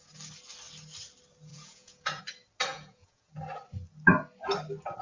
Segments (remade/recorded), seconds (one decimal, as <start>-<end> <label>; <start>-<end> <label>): 0.0-1.5 recorded; 1.5-2.2 remade; 2.2-2.7 recorded; 2.7-3.3 remade; 3.3-5.0 recorded